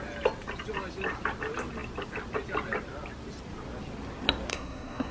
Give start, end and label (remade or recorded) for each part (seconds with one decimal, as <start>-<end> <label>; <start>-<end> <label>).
0.0-4.5 recorded; 4.5-5.1 remade